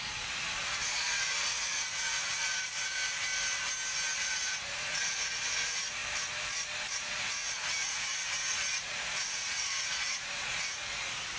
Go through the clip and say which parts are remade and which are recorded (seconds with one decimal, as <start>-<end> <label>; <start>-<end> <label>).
0.0-3.0 remade; 3.0-4.2 recorded; 4.2-6.0 remade; 6.0-6.9 recorded; 6.9-11.4 remade